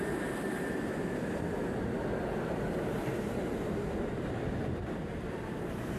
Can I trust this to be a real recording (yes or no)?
yes